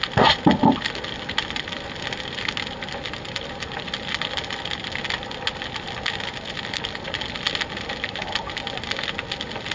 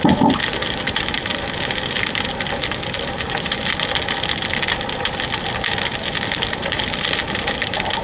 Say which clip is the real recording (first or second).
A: first